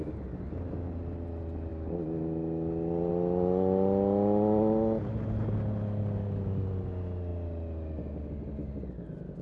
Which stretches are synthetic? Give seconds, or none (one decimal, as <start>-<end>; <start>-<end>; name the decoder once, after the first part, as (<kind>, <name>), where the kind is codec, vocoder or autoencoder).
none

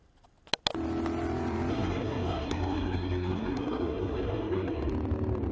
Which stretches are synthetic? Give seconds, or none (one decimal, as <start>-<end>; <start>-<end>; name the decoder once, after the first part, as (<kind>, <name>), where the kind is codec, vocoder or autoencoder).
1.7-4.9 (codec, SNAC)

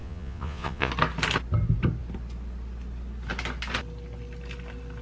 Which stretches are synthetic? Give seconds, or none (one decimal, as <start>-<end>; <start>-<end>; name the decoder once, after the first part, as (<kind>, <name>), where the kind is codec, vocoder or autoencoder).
0.0-0.9 (vocoder, Vocos)

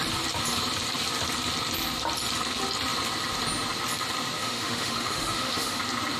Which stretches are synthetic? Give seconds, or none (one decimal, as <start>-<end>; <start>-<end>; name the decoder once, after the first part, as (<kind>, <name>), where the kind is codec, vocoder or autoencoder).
4.4-5.8 (autoencoder, DAC-VAE)

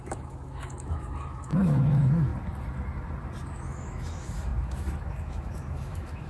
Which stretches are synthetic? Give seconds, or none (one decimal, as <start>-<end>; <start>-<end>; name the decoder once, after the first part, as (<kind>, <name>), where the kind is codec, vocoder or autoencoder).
0.0-2.3 (autoencoder, DAC-VAE); 3.5-6.3